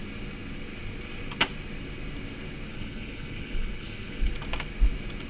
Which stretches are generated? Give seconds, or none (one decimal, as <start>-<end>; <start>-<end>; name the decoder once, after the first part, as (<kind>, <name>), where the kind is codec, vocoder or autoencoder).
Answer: 2.7-4.3 (codec, HILCodec)